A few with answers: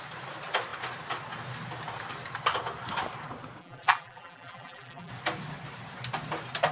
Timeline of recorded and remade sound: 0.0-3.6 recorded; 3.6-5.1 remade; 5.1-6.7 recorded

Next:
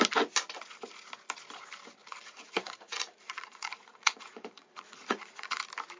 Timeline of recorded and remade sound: 0.0-2.0 recorded; 2.0-5.6 remade; 5.6-6.0 recorded

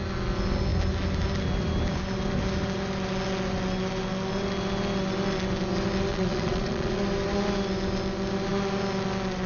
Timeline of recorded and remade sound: 0.0-6.1 recorded; 6.1-7.0 remade; 7.0-9.5 recorded

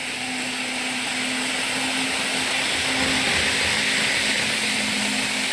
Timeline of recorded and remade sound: 0.0-5.5 recorded

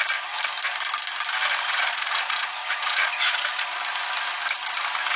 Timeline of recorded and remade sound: 0.0-1.6 recorded; 1.6-3.8 remade; 3.8-5.2 recorded

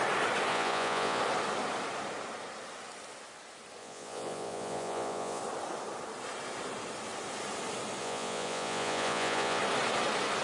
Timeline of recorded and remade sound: 0.0-0.5 recorded; 0.5-1.2 remade; 1.2-3.8 recorded; 3.8-5.4 remade; 5.4-8.0 recorded; 8.0-9.6 remade; 9.6-10.4 recorded